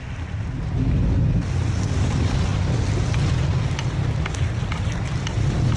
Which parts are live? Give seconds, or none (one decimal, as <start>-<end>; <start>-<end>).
0.0-5.8